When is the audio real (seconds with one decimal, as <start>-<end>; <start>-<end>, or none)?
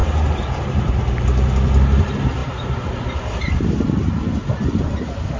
0.0-5.4